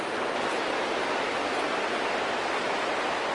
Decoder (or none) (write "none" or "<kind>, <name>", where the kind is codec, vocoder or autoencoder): none